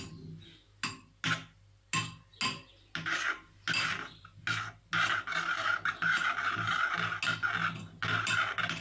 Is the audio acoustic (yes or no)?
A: yes